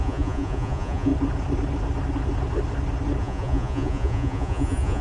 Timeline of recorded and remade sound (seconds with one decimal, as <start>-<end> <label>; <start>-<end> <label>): 0.0-1.1 remade; 1.1-3.2 recorded; 3.2-5.0 remade